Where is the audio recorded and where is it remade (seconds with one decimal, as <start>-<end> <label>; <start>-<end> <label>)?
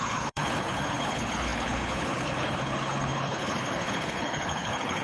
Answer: 0.0-5.0 remade